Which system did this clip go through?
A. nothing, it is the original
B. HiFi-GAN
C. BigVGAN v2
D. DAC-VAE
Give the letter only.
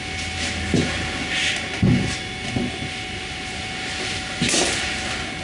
A